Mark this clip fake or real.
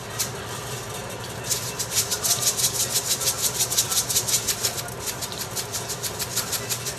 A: real